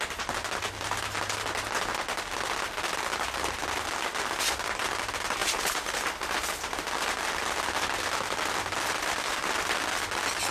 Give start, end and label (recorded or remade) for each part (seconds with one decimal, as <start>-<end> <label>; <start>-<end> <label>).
0.0-5.4 recorded; 5.4-6.0 remade; 6.0-10.5 recorded